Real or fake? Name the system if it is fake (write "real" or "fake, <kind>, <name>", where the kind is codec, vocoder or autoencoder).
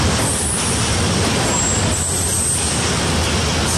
real